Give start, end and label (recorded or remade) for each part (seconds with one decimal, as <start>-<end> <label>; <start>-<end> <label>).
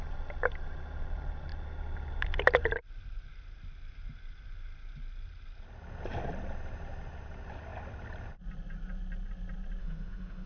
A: 0.0-9.8 recorded; 9.8-10.5 remade